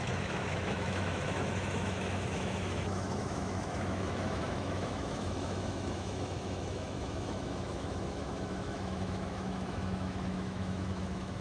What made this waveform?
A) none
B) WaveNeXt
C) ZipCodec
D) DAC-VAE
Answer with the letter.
D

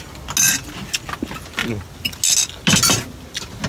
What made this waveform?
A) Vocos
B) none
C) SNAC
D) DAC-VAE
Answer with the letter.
B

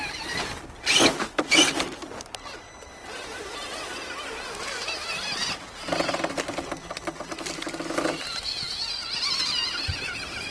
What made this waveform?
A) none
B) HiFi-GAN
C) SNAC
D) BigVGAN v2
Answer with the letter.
A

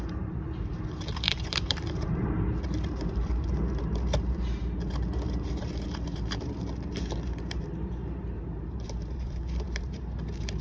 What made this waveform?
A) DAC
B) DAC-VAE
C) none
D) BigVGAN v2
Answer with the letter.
D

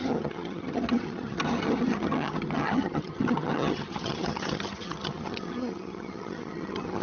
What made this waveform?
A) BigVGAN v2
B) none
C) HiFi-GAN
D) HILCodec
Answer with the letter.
C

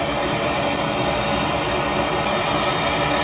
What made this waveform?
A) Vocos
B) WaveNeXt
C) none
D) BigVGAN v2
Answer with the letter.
C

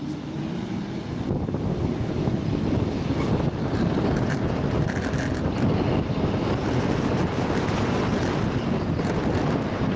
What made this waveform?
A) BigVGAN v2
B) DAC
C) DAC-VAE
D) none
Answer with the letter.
A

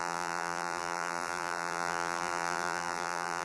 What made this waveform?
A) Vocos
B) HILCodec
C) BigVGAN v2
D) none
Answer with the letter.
C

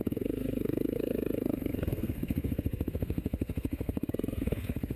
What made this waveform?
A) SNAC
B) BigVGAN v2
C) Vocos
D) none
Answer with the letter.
A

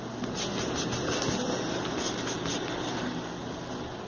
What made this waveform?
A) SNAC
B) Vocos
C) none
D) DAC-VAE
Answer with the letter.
C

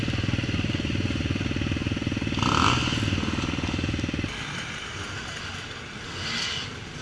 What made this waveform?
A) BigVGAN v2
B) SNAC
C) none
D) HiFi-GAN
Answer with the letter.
C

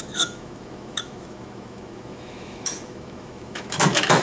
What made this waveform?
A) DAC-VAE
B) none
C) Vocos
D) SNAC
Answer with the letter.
A